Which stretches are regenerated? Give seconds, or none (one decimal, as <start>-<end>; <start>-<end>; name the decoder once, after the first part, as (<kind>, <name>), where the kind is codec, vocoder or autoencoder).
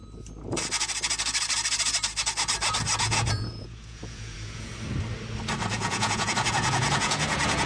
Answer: 3.0-4.7 (vocoder, Vocos); 5.7-7.7